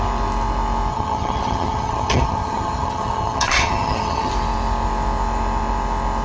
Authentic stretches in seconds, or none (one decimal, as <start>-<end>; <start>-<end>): 0.0-0.9; 4.3-6.2